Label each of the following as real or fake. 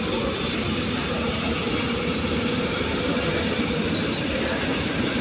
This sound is real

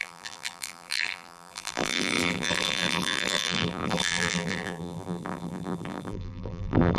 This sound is fake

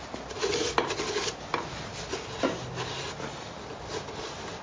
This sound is real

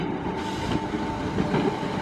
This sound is real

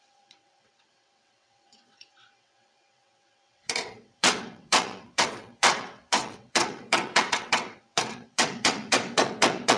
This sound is fake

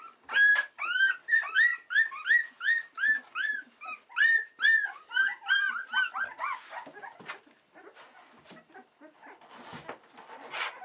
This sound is real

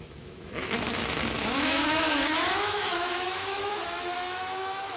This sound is fake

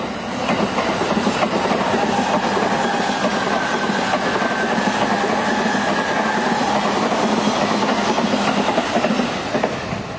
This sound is real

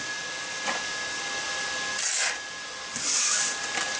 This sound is real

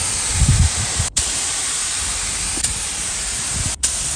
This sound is fake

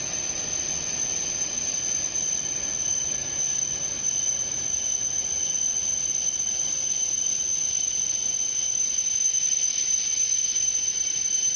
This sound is real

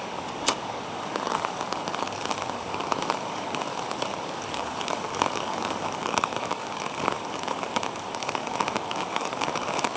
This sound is fake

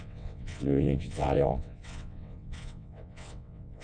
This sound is fake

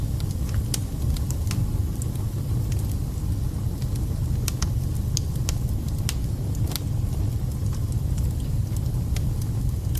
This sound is real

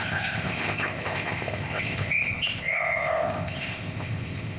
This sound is fake